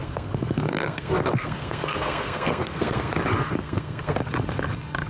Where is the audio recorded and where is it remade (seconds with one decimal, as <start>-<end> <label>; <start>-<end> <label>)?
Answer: 0.0-3.1 remade; 3.1-3.6 recorded; 3.6-4.2 remade; 4.2-5.1 recorded